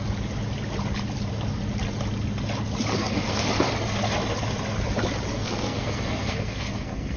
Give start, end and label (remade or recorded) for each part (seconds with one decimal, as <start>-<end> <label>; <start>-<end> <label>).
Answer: 0.0-2.9 recorded; 2.9-3.5 remade; 3.5-5.3 recorded; 5.3-7.2 remade